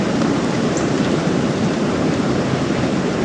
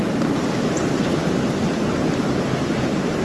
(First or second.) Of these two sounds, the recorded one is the second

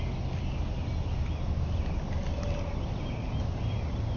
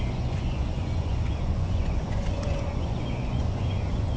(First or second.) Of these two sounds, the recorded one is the first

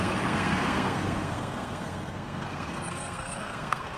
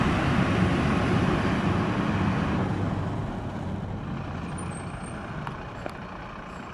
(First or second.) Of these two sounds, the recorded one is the second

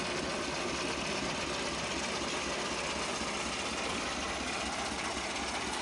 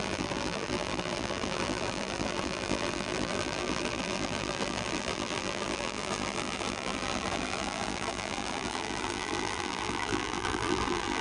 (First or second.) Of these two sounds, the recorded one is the first